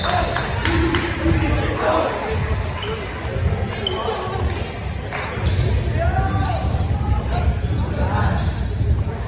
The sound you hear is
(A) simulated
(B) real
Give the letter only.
B